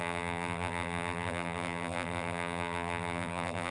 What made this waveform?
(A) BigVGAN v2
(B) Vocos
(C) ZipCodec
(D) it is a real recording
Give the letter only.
A